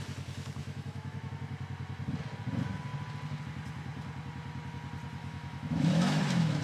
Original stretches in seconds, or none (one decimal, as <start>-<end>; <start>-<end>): 0.0-0.6; 1.3-5.2